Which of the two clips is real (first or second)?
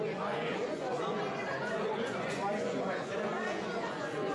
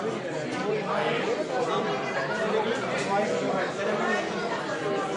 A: second